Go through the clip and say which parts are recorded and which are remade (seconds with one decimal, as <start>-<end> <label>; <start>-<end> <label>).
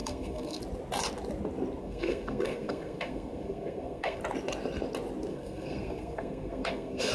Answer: 0.0-0.6 remade; 0.6-1.8 recorded; 1.8-4.2 remade; 4.2-5.3 recorded; 5.3-7.1 remade